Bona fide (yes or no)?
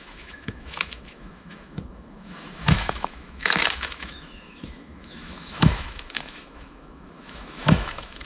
no